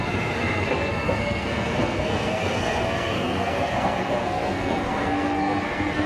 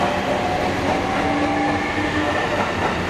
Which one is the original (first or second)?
second